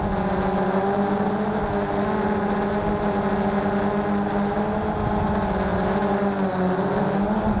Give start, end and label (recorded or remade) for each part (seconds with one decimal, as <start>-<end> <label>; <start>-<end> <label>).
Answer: 0.0-7.6 recorded